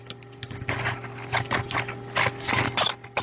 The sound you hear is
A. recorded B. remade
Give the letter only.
A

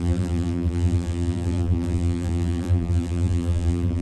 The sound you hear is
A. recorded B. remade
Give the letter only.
B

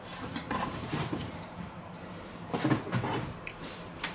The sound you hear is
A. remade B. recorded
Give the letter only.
A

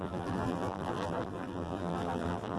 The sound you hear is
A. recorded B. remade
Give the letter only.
B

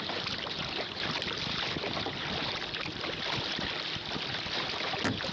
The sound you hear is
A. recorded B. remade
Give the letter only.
A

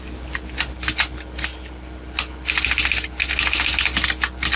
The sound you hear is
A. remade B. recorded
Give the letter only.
B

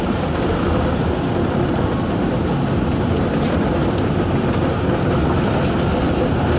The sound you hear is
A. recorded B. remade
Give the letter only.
A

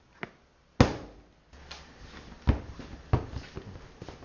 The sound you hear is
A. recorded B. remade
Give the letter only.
A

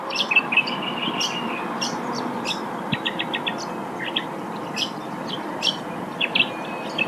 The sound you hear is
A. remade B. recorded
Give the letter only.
B